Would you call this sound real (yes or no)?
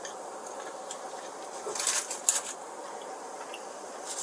yes